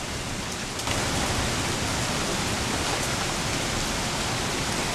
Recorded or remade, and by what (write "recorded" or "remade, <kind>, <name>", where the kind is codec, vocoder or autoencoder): recorded